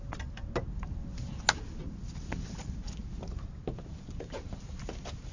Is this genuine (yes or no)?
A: yes